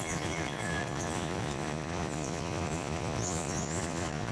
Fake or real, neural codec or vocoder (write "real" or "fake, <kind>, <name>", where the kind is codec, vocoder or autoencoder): fake, vocoder, Vocos